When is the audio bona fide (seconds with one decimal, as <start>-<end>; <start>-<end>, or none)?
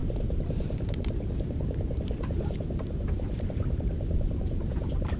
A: none